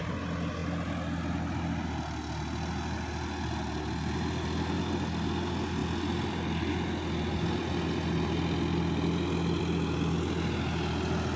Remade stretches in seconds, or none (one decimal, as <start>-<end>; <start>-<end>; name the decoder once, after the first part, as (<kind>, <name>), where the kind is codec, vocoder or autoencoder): none